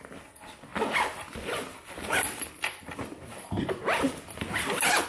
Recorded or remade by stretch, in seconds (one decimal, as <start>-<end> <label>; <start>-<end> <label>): 0.0-5.1 recorded